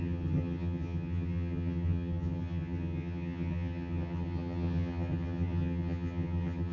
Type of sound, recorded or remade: remade